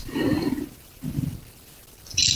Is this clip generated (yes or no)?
no